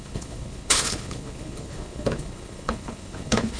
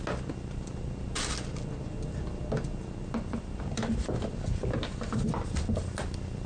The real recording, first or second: second